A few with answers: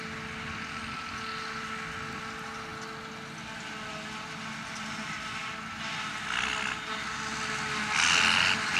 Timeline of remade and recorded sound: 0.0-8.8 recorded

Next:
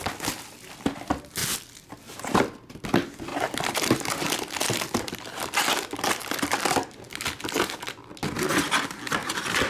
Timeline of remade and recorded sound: 0.0-1.4 recorded; 1.4-2.8 remade; 2.8-9.7 recorded

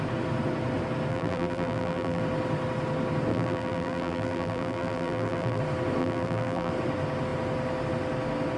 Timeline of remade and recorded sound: 0.0-1.1 recorded; 1.1-2.2 remade; 2.2-3.3 recorded; 3.3-5.6 remade; 5.6-6.0 recorded; 6.0-6.7 remade; 6.7-8.6 recorded

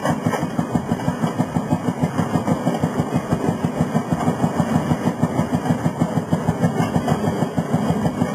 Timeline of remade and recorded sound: 0.0-2.0 remade; 2.0-8.3 recorded

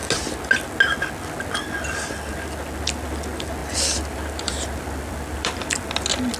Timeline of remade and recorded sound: 0.0-3.6 recorded; 3.6-5.9 remade; 5.9-6.4 recorded

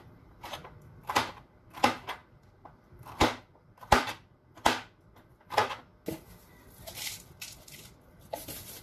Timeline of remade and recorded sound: 0.0-2.2 recorded; 2.2-4.1 remade; 4.1-8.8 recorded

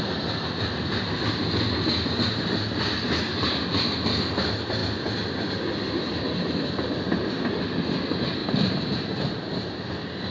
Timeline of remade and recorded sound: 0.0-8.4 recorded; 8.4-9.1 remade; 9.1-10.3 recorded

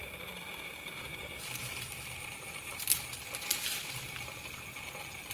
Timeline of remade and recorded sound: 0.0-2.8 remade; 2.8-5.3 recorded